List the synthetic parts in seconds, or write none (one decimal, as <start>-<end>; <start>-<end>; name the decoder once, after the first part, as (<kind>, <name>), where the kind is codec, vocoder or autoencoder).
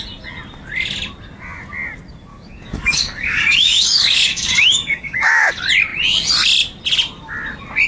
2.3-5.5 (codec, DAC)